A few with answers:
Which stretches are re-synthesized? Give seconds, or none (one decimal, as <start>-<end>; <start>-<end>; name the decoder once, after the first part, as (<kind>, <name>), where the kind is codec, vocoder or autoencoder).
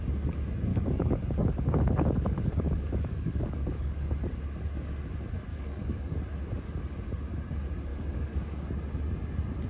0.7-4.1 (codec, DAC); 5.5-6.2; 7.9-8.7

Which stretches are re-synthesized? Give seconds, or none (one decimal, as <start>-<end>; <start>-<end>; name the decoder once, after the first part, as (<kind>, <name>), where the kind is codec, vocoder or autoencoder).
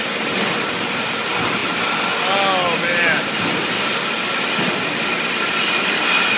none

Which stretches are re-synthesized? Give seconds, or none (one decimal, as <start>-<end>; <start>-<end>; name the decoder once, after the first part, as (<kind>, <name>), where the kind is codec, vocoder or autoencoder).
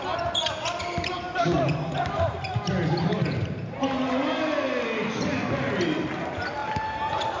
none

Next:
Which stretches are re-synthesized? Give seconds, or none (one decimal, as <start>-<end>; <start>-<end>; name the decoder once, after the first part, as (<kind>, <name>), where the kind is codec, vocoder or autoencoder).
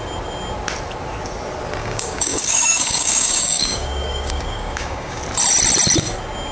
1.8-5.2 (codec, DAC)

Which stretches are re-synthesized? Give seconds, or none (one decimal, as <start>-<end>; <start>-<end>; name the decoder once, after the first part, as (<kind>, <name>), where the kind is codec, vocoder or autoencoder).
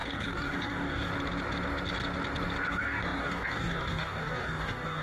0.0-1.1 (codec, DAC); 2.7-5.0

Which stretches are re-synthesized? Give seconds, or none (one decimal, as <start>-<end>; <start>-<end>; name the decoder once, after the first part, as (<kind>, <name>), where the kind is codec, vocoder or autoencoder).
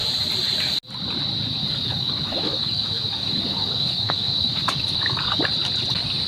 1.6-5.4 (codec, DAC)